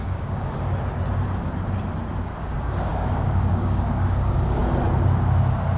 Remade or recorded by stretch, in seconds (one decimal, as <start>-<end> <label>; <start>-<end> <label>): 0.0-0.4 remade; 0.4-2.2 recorded; 2.2-4.6 remade; 4.6-5.8 recorded